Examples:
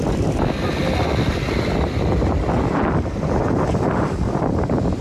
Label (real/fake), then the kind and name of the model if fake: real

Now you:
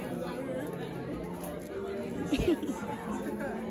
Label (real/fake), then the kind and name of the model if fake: real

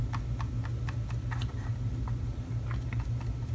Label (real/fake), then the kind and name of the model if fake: real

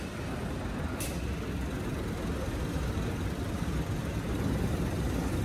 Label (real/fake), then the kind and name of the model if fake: real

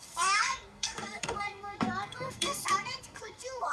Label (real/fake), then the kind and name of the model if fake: fake, codec, SNAC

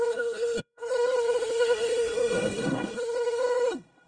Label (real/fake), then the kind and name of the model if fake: fake, codec, SNAC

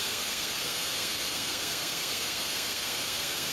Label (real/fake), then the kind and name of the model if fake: fake, codec, SNAC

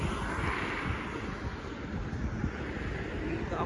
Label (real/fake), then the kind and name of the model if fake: real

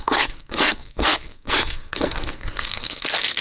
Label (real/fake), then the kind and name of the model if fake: fake, codec, SNAC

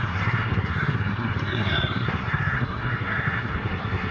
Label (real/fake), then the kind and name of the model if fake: fake, codec, SNAC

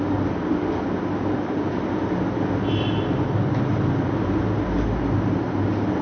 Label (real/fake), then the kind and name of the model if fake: real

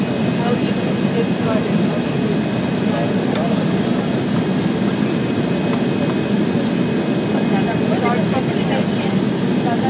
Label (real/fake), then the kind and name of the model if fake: real